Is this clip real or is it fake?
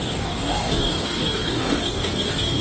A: fake